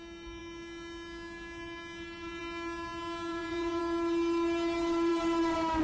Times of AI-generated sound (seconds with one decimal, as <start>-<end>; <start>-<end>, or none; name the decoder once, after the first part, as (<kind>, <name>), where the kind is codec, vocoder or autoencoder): 3.3-3.8 (vocoder, Vocos)